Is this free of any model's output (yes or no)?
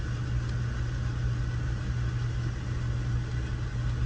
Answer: yes